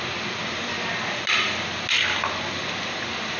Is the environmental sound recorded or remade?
recorded